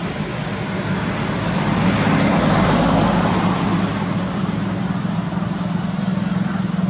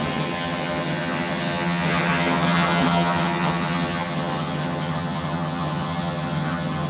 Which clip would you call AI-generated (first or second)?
second